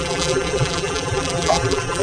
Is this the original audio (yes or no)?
no